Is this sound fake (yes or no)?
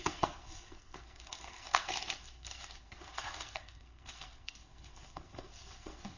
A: yes